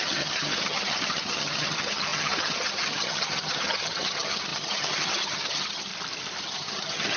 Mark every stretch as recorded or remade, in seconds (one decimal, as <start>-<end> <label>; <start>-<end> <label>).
0.0-5.9 remade; 5.9-6.4 recorded; 6.4-7.2 remade

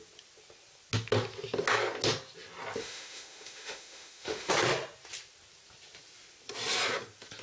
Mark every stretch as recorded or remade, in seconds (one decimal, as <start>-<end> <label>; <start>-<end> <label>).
0.0-2.8 recorded; 2.8-4.5 remade; 4.5-7.4 recorded

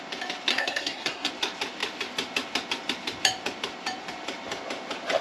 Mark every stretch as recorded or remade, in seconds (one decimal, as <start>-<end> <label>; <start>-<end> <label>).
0.0-0.5 recorded; 0.5-1.3 remade; 1.3-5.2 recorded

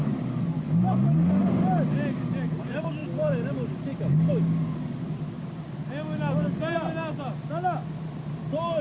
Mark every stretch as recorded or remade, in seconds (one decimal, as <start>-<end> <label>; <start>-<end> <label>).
0.0-8.8 recorded